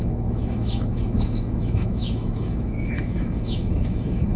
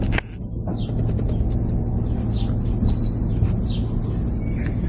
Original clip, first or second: second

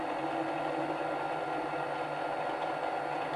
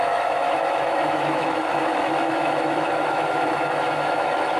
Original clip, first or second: first